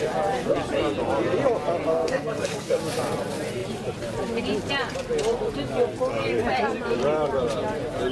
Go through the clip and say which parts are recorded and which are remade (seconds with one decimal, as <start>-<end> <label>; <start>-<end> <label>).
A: 0.0-1.9 recorded; 1.9-2.8 remade; 2.8-8.1 recorded